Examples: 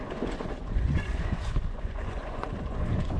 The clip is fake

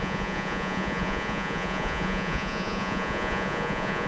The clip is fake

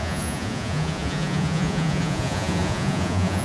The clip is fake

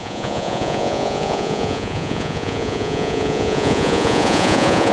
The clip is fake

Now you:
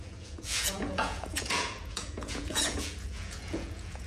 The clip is fake